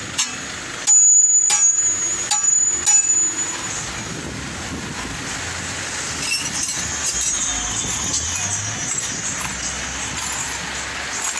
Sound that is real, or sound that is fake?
real